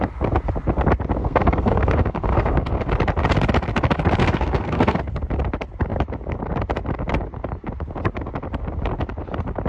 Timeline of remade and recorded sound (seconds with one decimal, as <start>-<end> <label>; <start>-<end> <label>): 0.0-1.2 recorded; 1.2-2.9 remade; 2.9-4.2 recorded; 4.2-5.0 remade; 5.0-9.7 recorded